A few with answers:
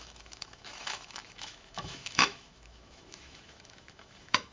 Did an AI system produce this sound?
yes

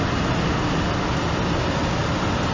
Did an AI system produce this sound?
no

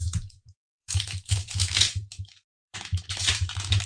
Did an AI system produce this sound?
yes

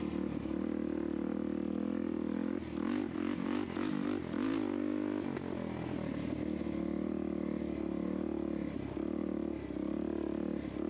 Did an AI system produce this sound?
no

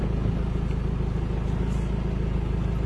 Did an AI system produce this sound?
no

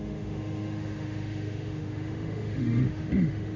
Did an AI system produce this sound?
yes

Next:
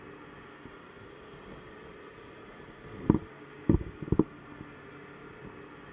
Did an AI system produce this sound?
no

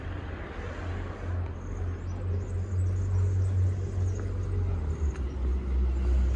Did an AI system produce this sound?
no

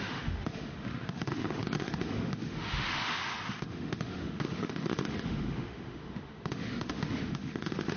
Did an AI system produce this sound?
yes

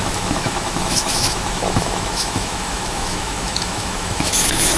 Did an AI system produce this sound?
yes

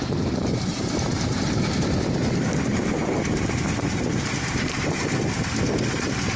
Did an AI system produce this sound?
no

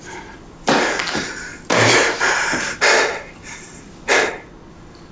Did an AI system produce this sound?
no